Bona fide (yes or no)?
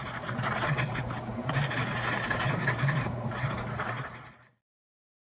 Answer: no